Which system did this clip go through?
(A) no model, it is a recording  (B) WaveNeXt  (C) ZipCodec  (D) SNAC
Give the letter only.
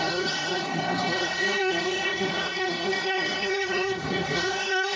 D